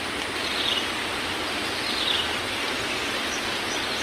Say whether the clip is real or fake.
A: real